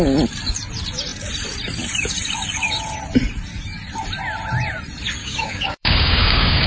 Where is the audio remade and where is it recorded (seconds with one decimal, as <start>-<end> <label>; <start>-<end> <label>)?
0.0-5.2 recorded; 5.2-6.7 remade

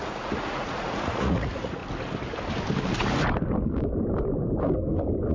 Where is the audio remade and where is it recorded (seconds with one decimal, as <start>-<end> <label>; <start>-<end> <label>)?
0.0-1.8 remade; 1.8-5.3 recorded

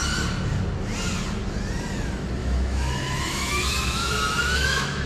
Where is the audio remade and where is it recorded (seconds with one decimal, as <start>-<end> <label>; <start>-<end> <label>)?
0.0-2.4 recorded; 2.4-5.1 remade

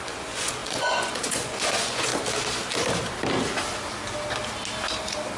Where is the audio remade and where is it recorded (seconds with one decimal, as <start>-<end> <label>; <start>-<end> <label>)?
0.0-2.1 remade; 2.1-5.4 recorded

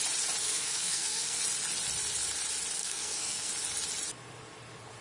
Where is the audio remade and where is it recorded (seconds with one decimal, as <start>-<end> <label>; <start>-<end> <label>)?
0.0-0.4 recorded; 0.4-1.4 remade; 1.4-2.8 recorded; 2.8-3.5 remade; 3.5-5.0 recorded